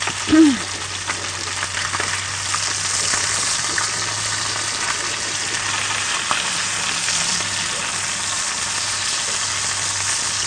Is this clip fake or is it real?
real